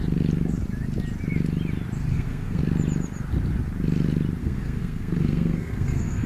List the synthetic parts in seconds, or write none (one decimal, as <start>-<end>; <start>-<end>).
2.1-2.6; 4.4-6.3